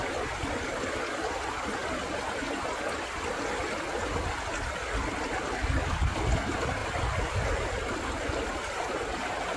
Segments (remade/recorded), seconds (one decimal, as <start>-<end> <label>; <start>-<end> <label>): 0.0-9.6 recorded